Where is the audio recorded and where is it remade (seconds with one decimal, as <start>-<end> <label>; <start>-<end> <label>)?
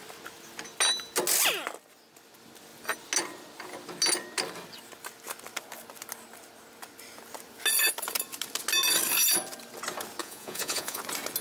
0.0-10.2 recorded; 10.2-11.0 remade; 11.0-11.4 recorded